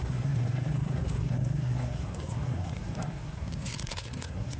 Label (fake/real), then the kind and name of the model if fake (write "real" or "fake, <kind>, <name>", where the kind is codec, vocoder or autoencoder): fake, codec, SNAC